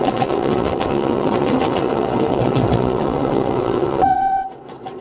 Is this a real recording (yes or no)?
no